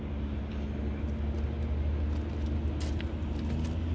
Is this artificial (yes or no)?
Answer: no